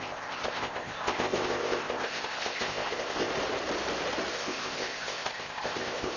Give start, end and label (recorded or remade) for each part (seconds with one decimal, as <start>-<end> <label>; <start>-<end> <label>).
0.0-3.3 remade; 3.3-4.3 recorded; 4.3-6.2 remade